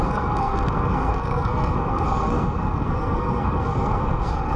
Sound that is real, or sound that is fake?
fake